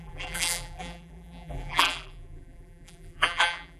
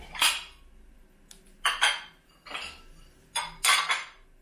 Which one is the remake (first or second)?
first